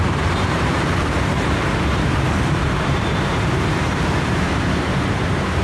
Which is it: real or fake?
fake